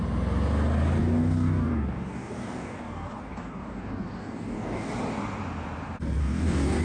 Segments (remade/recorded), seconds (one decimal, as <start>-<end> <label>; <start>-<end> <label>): 0.0-1.0 recorded; 1.0-4.9 remade; 4.9-6.2 recorded; 6.2-6.8 remade